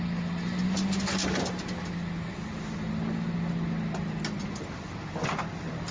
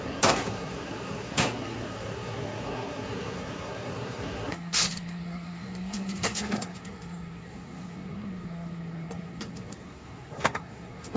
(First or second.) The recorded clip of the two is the first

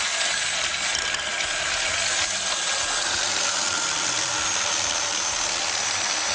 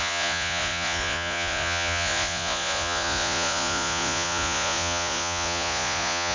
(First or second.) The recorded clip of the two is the first